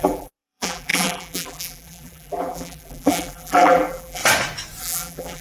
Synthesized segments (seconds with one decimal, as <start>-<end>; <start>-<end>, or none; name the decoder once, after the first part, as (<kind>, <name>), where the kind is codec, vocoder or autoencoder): 0.0-4.2 (vocoder, BigVGAN v2); 4.8-5.4

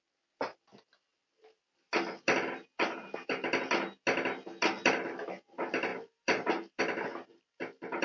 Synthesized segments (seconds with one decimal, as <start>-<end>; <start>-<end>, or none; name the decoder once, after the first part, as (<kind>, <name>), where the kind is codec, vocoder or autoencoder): 5.9-6.8 (vocoder, BigVGAN v2)

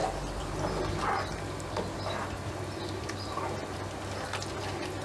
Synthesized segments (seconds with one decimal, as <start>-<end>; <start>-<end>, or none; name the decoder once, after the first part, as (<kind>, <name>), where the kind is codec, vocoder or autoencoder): none

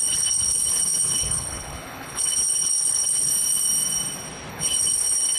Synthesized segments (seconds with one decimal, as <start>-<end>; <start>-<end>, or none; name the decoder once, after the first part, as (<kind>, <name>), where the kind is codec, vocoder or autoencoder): 0.0-3.3 (codec, HILCodec); 4.5-5.4

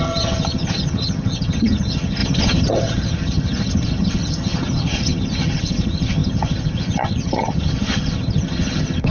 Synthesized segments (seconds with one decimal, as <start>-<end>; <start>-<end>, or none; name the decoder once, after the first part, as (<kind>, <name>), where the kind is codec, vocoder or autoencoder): 0.0-9.1 (vocoder, HiFi-GAN)

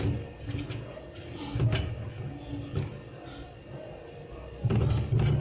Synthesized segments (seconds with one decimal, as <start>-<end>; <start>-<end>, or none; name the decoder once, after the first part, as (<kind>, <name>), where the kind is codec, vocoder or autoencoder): none

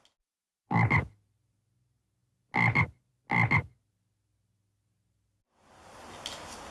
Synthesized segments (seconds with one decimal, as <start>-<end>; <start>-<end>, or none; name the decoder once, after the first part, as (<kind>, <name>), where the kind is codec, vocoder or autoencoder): none